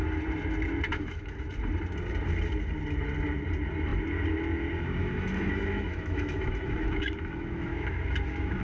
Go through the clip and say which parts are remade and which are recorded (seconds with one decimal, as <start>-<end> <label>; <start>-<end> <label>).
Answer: 0.0-0.9 recorded; 0.9-1.5 remade; 1.5-5.0 recorded; 5.0-8.6 remade